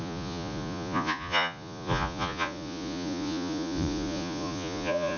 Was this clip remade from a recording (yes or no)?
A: yes